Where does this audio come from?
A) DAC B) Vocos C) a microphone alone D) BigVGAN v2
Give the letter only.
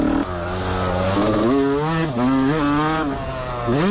C